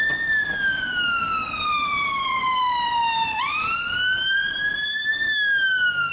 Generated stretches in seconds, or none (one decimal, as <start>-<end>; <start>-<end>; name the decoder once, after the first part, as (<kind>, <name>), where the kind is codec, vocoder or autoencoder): 1.4-5.1 (vocoder, BigVGAN v2)